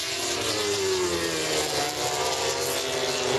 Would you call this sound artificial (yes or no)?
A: no